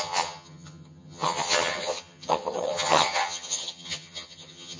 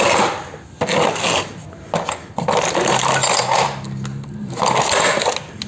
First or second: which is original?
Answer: second